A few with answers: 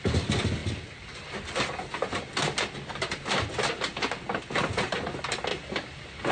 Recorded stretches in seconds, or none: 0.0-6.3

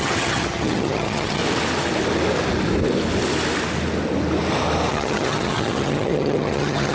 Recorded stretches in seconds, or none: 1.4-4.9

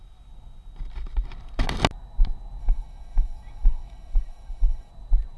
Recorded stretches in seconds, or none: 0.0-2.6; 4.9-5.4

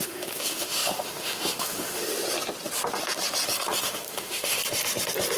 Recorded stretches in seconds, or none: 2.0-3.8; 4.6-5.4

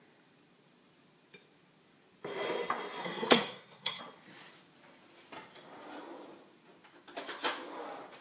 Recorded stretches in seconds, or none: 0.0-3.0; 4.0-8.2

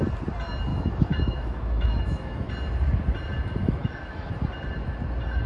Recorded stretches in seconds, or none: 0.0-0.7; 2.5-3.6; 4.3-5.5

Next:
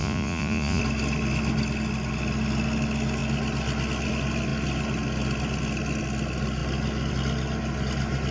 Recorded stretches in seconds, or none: 0.8-8.3